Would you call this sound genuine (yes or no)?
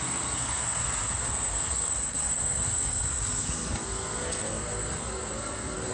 no